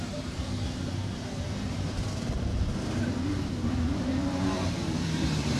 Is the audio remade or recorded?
remade